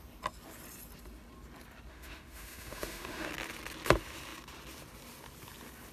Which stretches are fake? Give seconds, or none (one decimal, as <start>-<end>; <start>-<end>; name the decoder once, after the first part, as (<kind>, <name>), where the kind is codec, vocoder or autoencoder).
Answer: 1.9-3.3 (autoencoder, DAC-VAE)